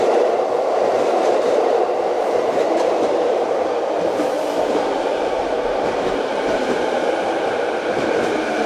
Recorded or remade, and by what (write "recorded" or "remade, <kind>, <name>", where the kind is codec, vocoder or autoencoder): remade, vocoder, BigVGAN v2